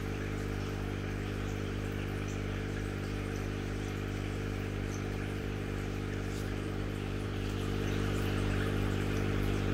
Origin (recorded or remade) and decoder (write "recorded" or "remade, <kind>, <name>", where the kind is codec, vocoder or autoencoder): remade, vocoder, BigVGAN v2